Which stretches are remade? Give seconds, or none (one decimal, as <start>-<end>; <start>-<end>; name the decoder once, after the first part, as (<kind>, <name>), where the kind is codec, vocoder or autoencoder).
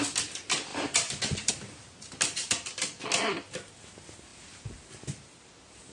0.7-1.5 (vocoder, BigVGAN v2); 4.3-5.0